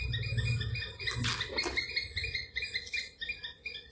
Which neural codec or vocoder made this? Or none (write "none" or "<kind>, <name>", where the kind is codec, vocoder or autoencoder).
none